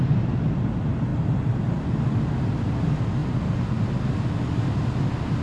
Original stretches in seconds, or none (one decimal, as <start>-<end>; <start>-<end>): 0.0-1.1; 1.8-5.4